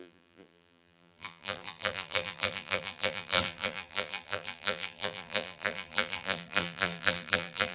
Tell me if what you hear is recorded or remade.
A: remade